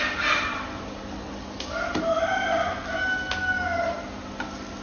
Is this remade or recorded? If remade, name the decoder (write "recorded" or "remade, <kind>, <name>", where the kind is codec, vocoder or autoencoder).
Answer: recorded